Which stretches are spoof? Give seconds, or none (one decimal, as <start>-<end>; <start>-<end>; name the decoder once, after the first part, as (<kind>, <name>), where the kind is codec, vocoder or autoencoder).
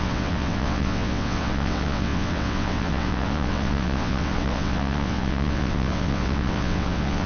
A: 0.0-7.3 (vocoder, WaveNeXt)